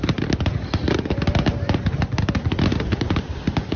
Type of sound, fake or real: real